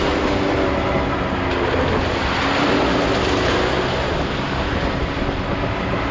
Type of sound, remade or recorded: recorded